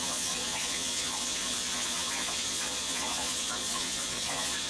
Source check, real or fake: fake